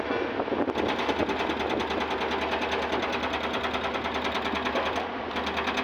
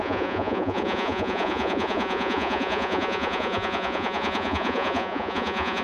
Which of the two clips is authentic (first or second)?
first